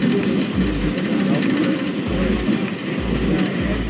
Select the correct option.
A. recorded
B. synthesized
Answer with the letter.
A